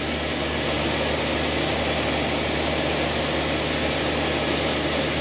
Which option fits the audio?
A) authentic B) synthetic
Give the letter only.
A